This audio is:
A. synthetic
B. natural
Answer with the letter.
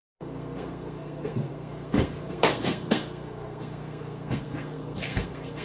A